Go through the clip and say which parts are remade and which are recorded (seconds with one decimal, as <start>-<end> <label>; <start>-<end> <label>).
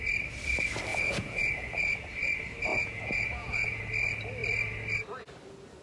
0.0-0.9 recorded; 0.9-1.8 remade; 1.8-2.7 recorded; 2.7-3.8 remade; 3.8-5.8 recorded